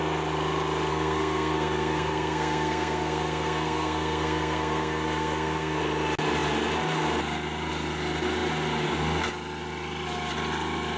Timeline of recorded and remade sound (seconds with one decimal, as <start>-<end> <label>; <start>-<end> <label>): 0.0-0.9 recorded; 0.9-5.8 remade; 5.8-11.0 recorded